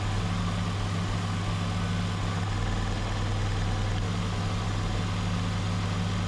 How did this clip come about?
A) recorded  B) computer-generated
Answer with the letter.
A